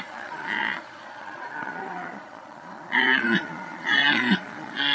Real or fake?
fake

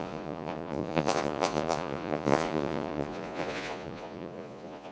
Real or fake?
fake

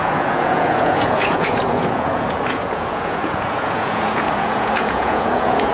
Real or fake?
fake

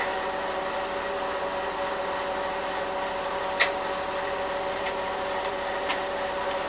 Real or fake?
real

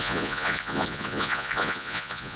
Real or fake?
fake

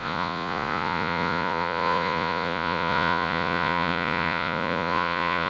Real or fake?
fake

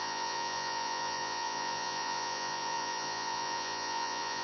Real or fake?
fake